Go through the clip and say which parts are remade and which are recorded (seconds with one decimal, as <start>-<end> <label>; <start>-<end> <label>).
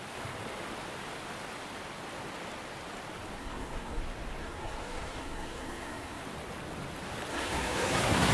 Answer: 0.0-3.4 recorded; 3.4-4.0 remade; 4.0-4.4 recorded; 4.4-6.2 remade; 6.2-7.3 recorded; 7.3-8.3 remade